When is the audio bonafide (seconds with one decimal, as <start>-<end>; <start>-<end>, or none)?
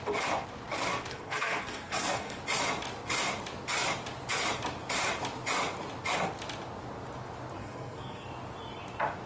0.0-1.1; 2.4-7.6; 8.3-9.3